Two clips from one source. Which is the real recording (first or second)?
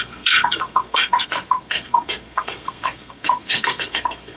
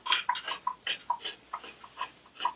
second